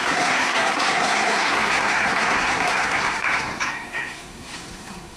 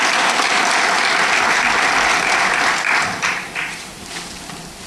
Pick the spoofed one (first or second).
first